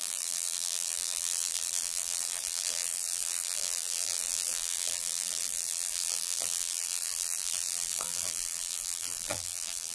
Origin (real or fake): fake